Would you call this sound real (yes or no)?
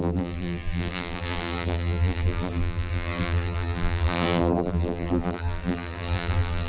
no